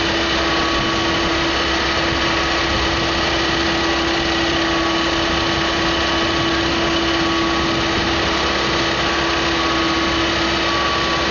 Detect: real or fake real